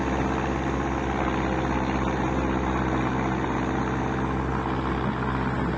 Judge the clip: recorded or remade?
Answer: recorded